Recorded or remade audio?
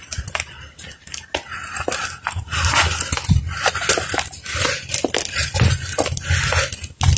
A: recorded